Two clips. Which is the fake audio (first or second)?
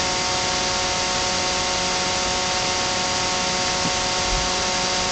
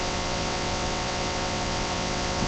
second